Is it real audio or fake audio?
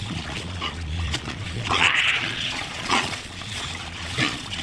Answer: fake